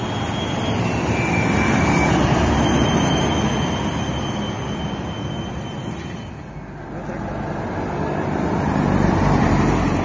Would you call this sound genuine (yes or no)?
yes